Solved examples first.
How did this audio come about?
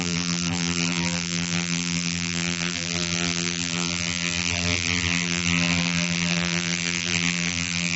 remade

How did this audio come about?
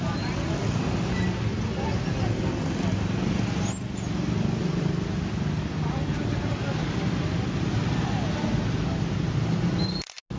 recorded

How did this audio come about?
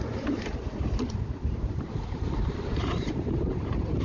remade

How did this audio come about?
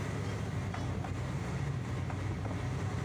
recorded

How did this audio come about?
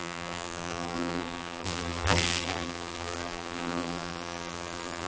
remade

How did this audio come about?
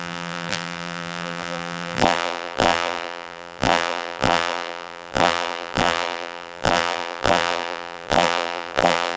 remade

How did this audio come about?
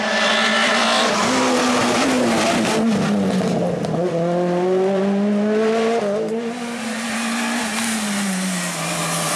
recorded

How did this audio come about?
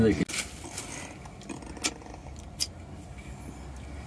recorded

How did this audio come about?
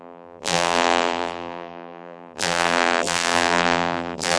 remade